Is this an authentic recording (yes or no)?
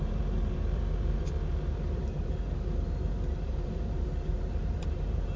no